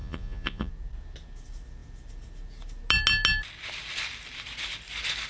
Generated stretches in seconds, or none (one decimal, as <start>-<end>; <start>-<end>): 0.0-0.7